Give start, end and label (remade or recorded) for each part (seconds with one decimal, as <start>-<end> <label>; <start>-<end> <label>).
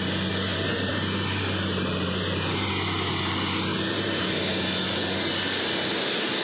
0.0-0.5 recorded; 0.5-2.7 remade; 2.7-3.7 recorded; 3.7-4.3 remade; 4.3-6.4 recorded